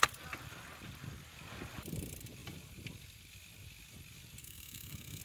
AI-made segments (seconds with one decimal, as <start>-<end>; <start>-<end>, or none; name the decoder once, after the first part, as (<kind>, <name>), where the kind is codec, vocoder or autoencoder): 4.4-5.2 (codec, SNAC)